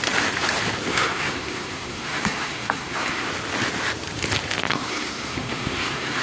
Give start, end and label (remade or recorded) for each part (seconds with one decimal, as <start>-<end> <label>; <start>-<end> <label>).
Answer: 0.0-0.9 recorded; 0.9-3.3 remade; 3.3-4.7 recorded; 4.7-6.2 remade